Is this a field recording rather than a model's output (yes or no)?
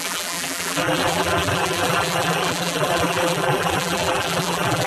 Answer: no